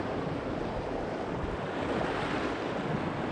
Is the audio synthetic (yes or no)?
no